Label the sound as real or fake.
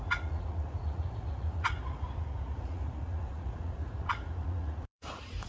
fake